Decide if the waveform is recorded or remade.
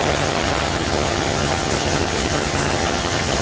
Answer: remade